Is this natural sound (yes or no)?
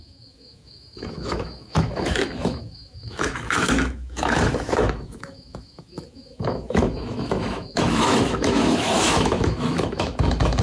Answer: no